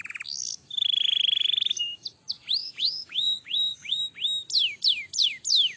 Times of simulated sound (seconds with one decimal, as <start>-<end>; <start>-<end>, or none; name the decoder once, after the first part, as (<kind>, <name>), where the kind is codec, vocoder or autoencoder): 2.6-4.0 (codec, DAC)